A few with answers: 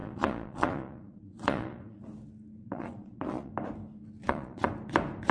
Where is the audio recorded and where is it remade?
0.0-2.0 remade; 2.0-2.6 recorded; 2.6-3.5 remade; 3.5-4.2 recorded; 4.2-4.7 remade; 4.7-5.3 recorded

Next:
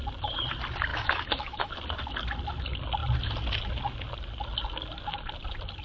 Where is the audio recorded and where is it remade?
0.0-0.9 recorded; 0.9-1.7 remade; 1.7-5.8 recorded

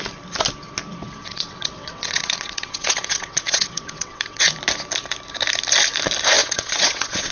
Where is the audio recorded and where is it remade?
0.0-1.2 recorded; 1.2-4.5 remade; 4.5-6.4 recorded; 6.4-7.3 remade

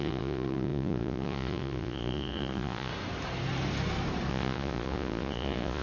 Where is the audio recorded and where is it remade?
0.0-2.9 remade; 2.9-4.3 recorded; 4.3-5.8 remade

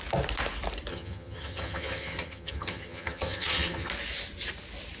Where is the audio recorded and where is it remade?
0.0-0.9 recorded; 0.9-3.9 remade; 3.9-5.0 recorded